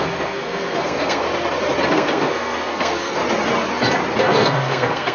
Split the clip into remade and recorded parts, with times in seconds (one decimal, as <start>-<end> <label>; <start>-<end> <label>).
0.0-1.2 remade; 1.2-1.9 recorded; 1.9-3.2 remade; 3.2-4.2 recorded; 4.2-5.1 remade